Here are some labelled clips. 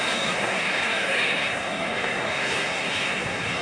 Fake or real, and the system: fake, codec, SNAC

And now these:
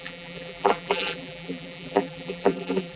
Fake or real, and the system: fake, vocoder, BigVGAN v2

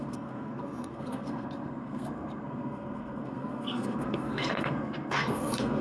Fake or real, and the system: fake, codec, SNAC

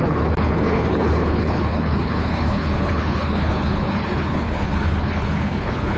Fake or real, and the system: fake, codec, HILCodec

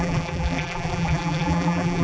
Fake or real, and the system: fake, vocoder, BigVGAN v2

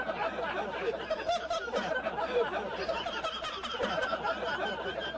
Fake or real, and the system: real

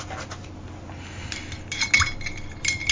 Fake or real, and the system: real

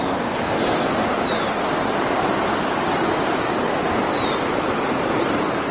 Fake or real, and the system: real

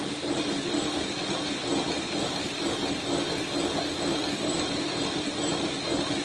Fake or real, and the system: real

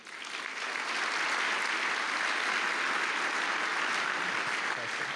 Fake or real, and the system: real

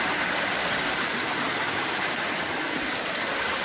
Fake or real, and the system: real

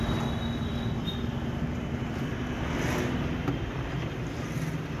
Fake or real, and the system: real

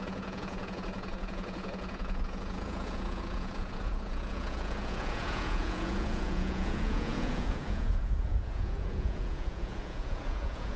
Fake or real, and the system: fake, vocoder, Vocos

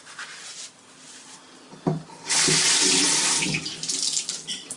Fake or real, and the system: real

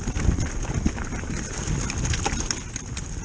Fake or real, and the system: real